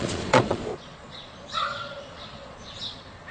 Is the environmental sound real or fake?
fake